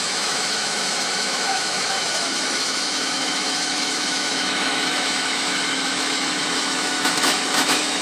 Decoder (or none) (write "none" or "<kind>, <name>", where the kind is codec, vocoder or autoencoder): autoencoder, DAC-VAE